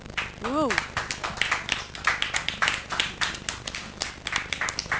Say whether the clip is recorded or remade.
recorded